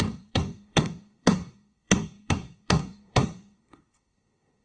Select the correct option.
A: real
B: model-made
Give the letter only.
B